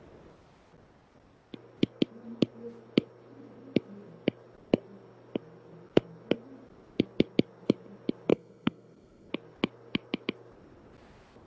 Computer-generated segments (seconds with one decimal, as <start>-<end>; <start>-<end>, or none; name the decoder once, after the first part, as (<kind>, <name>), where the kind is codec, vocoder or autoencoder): 8.3-9.3 (codec, SNAC)